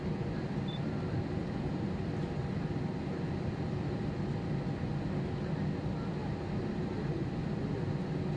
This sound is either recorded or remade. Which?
recorded